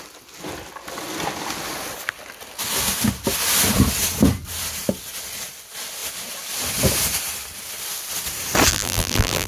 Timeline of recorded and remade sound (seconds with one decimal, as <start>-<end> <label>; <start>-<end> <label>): 0.0-8.7 recorded; 8.7-9.5 remade